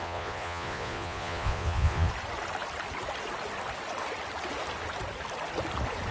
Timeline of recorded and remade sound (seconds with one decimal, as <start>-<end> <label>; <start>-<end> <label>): 0.0-2.1 remade; 2.1-6.1 recorded